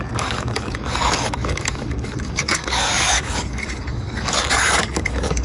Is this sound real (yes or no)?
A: no